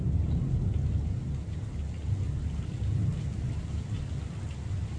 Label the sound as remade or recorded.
recorded